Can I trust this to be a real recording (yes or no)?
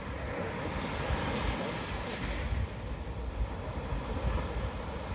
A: yes